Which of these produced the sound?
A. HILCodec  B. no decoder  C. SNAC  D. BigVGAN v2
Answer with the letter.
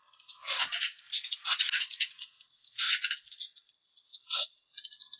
B